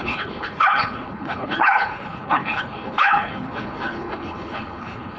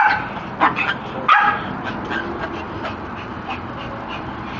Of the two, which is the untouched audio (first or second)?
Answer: second